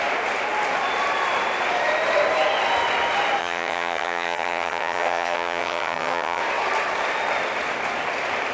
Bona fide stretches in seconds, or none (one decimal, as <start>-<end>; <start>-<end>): 0.0-3.4; 6.4-8.5